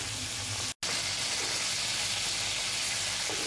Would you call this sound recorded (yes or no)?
yes